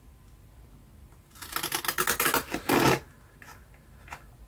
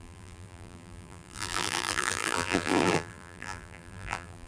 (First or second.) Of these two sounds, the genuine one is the first